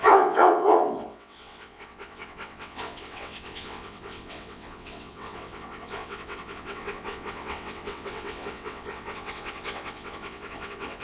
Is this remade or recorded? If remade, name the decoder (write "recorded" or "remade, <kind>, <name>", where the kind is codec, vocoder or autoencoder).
remade, vocoder, WaveNeXt